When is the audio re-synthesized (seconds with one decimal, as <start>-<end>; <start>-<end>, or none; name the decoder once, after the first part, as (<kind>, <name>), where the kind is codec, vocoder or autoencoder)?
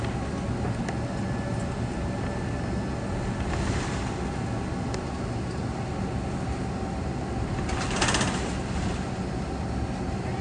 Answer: none